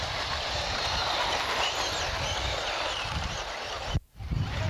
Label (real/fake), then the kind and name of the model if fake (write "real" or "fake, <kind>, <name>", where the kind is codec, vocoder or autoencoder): fake, vocoder, BigVGAN v2